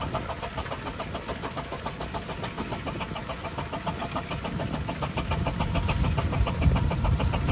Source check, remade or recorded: recorded